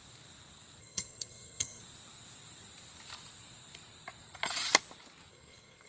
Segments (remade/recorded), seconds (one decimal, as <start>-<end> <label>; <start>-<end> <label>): 0.0-0.8 recorded; 0.8-1.8 remade; 1.8-5.3 recorded; 5.3-5.9 remade